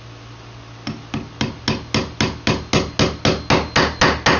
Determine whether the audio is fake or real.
real